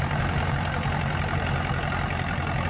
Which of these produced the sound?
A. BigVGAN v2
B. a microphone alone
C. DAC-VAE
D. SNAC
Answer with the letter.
B